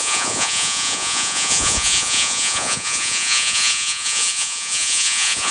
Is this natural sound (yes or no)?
no